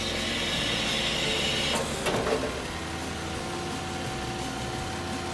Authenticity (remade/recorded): recorded